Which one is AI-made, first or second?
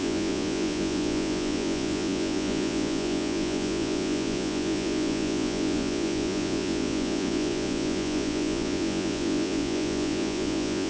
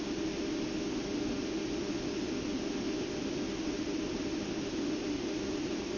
first